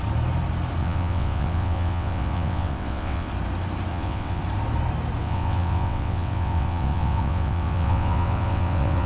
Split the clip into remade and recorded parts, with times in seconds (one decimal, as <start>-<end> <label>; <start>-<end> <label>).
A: 0.0-0.8 recorded; 0.8-3.3 remade; 3.3-3.9 recorded; 3.9-4.4 remade; 4.4-5.2 recorded; 5.2-9.1 remade